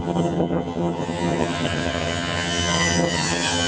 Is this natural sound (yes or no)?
no